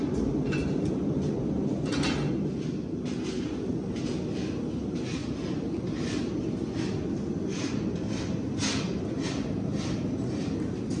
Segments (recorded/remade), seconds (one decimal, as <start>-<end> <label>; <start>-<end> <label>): 0.0-11.0 recorded